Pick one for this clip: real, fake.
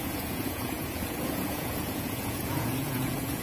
fake